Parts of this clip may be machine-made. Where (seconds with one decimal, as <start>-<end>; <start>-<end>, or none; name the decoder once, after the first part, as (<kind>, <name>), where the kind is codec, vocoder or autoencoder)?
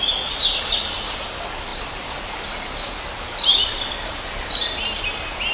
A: none